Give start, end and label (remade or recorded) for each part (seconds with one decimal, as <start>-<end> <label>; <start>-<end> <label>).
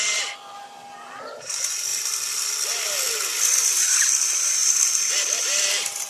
0.0-1.9 recorded; 1.9-3.4 remade; 3.4-4.6 recorded; 4.6-5.1 remade; 5.1-6.1 recorded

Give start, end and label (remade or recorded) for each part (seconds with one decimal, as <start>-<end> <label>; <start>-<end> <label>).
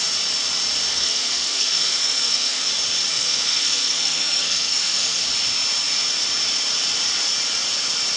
0.0-0.9 recorded; 0.9-2.7 remade; 2.7-3.1 recorded; 3.1-5.3 remade; 5.3-8.2 recorded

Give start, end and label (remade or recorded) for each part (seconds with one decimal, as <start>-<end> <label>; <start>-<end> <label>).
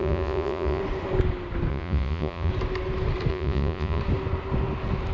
0.0-0.8 remade; 0.8-1.7 recorded; 1.7-2.5 remade; 2.5-3.3 recorded; 3.3-4.0 remade; 4.0-5.1 recorded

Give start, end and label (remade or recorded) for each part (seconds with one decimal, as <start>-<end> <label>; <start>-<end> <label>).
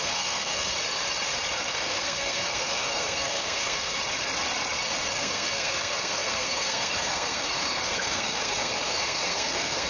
0.0-0.7 remade; 0.7-1.6 recorded; 1.6-4.0 remade; 4.0-5.2 recorded; 5.2-9.9 remade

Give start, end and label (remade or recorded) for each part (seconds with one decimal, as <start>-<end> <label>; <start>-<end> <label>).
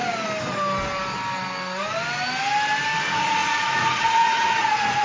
0.0-3.0 recorded; 3.0-5.0 remade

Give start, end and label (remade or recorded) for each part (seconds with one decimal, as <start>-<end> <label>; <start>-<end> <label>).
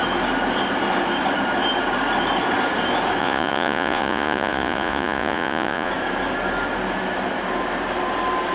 0.0-3.2 recorded; 3.2-5.9 remade; 5.9-8.5 recorded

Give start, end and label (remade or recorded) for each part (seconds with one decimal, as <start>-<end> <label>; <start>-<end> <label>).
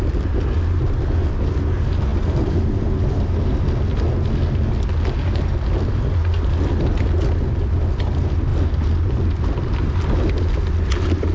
0.0-11.3 recorded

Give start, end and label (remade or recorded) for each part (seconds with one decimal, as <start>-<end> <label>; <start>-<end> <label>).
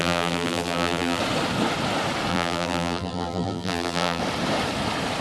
0.0-1.2 remade; 1.2-2.3 recorded; 2.3-4.2 remade; 4.2-5.2 recorded